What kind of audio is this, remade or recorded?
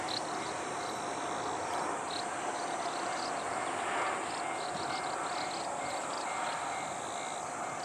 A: recorded